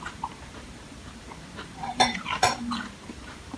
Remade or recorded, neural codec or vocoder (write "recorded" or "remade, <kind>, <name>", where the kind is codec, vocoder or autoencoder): remade, vocoder, BigVGAN v2